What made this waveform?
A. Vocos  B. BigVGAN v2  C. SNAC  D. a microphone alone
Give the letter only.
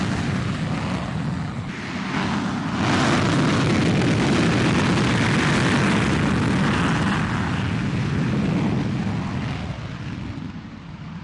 D